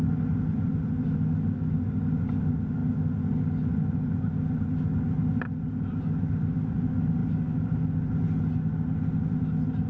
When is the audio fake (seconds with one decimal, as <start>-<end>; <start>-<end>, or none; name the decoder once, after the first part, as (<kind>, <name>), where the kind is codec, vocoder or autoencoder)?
none